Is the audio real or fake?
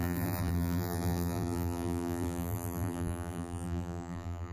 fake